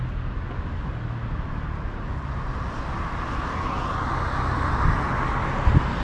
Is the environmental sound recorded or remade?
recorded